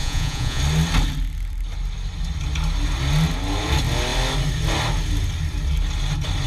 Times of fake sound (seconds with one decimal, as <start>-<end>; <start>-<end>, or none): 0.0-0.6